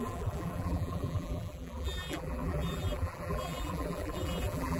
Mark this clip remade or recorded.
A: remade